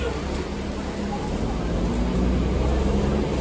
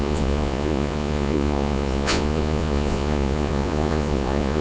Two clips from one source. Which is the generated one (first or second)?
second